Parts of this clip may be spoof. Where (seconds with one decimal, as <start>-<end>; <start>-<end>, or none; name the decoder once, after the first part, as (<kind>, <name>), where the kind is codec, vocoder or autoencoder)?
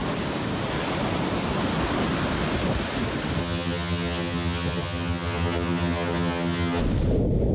3.4-6.8 (vocoder, HiFi-GAN)